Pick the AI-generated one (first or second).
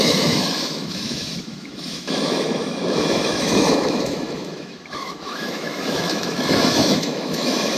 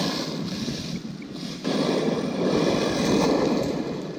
first